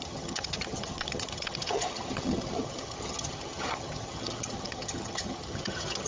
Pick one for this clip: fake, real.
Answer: fake